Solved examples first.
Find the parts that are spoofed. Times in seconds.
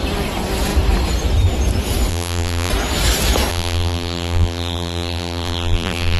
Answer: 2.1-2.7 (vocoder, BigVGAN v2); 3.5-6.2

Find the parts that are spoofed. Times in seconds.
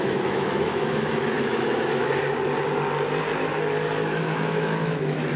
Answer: 0.0-2.1 (autoencoder, DAC-VAE); 4.2-5.4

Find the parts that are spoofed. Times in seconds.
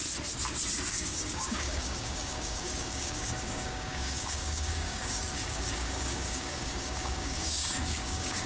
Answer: 0.9-8.5 (codec, DAC)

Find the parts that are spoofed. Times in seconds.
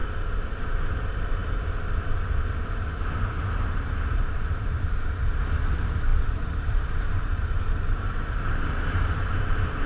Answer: 0.6-1.4 (vocoder, BigVGAN v2); 4.2-9.9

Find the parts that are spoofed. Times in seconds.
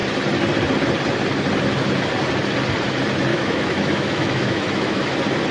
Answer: 3.3-5.1 (autoencoder, DAC-VAE)